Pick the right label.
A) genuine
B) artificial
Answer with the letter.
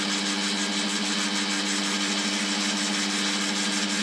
A